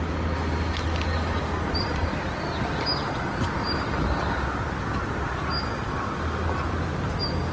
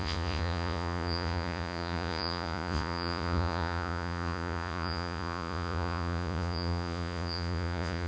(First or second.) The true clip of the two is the first